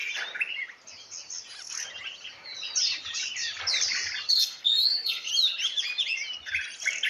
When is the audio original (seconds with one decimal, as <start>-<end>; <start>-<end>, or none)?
0.0-4.3; 5.3-7.1